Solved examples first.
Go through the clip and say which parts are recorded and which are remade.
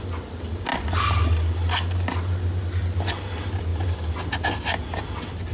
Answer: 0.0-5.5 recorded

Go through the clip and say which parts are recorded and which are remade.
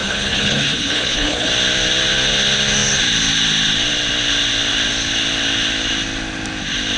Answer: 0.0-1.5 remade; 1.5-7.0 recorded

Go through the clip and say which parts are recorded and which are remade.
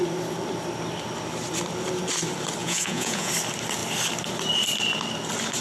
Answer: 0.0-2.6 recorded; 2.6-3.3 remade; 3.3-5.6 recorded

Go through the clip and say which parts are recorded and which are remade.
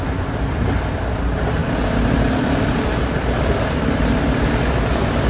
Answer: 0.0-1.6 recorded; 1.6-4.1 remade; 4.1-5.3 recorded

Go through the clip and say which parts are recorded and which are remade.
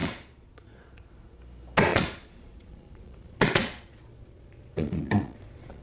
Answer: 0.0-1.4 remade; 1.4-1.9 recorded; 1.9-5.8 remade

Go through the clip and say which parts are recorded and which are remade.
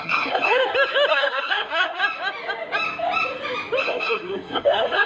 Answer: 0.0-0.6 remade; 0.6-1.1 recorded; 1.1-2.0 remade; 2.0-3.8 recorded; 3.8-5.1 remade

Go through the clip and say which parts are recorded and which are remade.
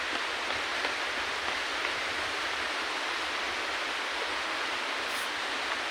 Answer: 0.0-5.9 recorded